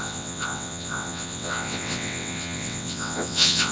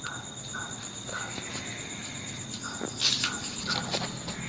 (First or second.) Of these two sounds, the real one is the second